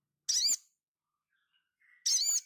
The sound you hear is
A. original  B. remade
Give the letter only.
A